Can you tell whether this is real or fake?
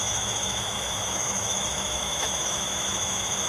fake